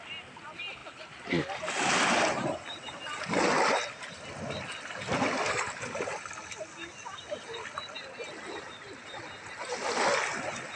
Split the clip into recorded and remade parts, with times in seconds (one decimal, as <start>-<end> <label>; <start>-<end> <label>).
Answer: 0.0-10.8 recorded